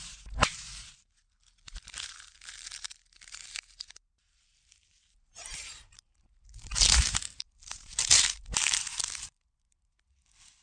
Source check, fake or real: fake